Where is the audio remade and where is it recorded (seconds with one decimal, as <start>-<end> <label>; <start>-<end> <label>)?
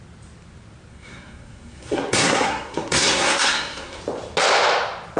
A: 0.0-0.9 recorded; 0.9-4.0 remade; 4.0-5.2 recorded